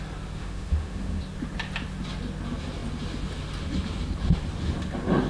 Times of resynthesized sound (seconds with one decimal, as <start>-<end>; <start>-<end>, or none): 0.4-1.2